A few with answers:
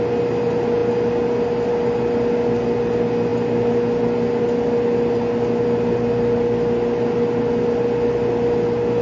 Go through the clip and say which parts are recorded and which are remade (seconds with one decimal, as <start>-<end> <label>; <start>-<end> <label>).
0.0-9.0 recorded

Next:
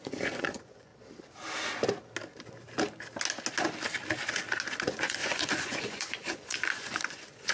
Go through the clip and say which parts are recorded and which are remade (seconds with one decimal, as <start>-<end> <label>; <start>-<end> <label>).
0.0-0.9 remade; 0.9-4.8 recorded; 4.8-7.5 remade

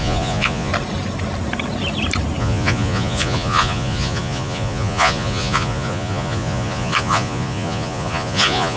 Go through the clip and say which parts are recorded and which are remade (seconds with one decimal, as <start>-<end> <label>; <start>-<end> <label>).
0.0-0.7 remade; 0.7-2.4 recorded; 2.4-8.8 remade

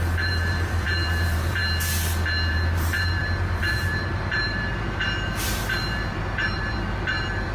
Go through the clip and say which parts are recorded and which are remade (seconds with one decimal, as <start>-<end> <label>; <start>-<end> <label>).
0.0-1.6 remade; 1.6-2.5 recorded; 2.5-7.5 remade